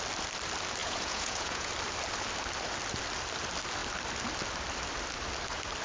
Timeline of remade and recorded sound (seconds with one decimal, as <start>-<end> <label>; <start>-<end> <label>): 0.0-0.8 recorded; 0.8-1.7 remade; 1.7-5.8 recorded